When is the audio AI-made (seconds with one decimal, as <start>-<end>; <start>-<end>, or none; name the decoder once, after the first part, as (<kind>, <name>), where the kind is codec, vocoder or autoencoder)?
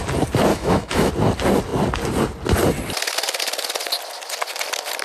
0.5-1.1 (autoencoder, DAC-VAE)